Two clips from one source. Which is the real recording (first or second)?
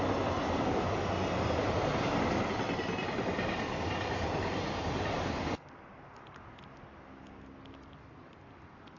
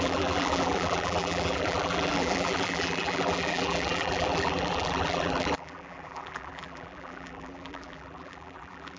first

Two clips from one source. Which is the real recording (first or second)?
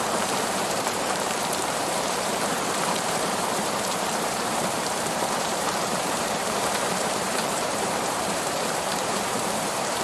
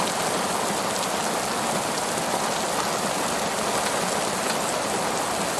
second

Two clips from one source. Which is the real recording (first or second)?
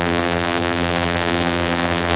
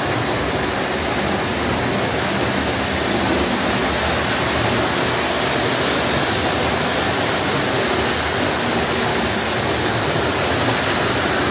second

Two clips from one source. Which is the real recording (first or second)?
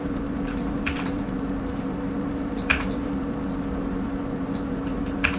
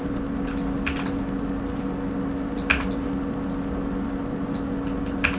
second